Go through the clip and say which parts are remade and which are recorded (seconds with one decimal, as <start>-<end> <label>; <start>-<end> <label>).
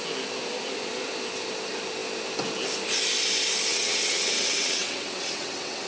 0.0-3.7 recorded; 3.7-5.9 remade